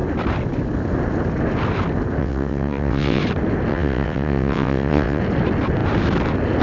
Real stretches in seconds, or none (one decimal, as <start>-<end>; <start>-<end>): 0.0-2.2; 3.2-3.7; 5.2-6.6